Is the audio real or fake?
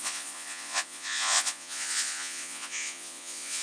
fake